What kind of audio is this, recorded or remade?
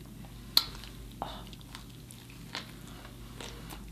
recorded